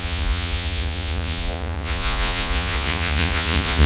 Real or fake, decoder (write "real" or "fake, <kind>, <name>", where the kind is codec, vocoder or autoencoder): fake, vocoder, Vocos